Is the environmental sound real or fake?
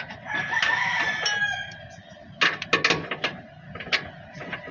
real